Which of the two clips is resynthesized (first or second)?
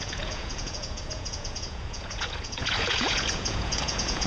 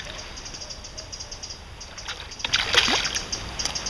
first